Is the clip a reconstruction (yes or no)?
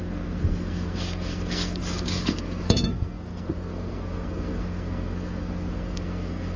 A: yes